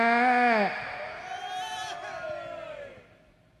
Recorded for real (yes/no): yes